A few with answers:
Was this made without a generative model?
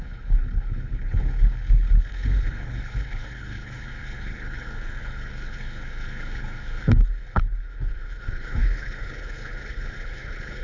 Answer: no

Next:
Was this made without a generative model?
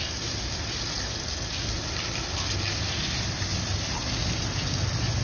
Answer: yes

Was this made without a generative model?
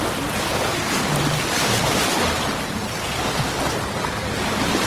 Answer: yes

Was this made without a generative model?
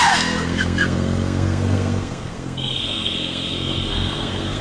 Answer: no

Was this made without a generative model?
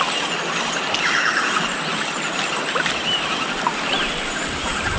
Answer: yes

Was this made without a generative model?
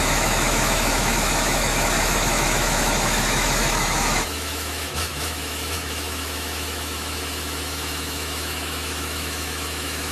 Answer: no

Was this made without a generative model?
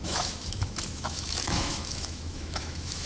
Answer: no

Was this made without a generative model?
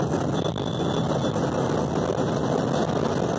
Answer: yes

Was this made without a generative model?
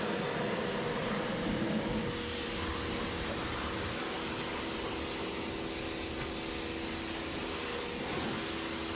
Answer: yes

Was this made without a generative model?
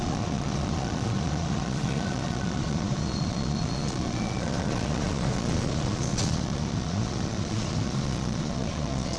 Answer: no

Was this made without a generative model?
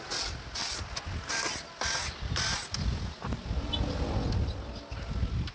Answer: yes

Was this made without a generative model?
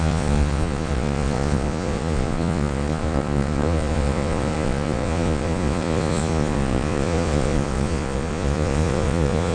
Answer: no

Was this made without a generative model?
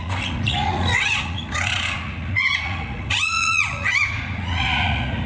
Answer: no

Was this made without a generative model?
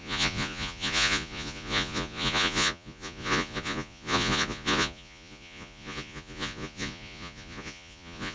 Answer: no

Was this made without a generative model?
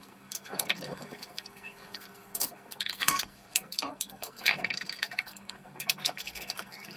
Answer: no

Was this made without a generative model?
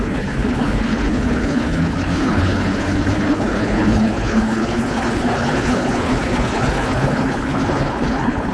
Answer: no